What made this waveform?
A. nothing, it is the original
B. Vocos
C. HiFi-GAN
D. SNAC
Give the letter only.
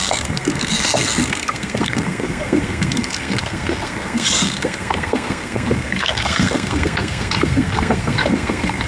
D